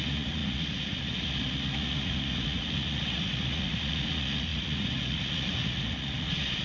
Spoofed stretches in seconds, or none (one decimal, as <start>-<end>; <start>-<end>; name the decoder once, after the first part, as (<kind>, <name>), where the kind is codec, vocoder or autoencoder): 0.0-6.6 (vocoder, Vocos)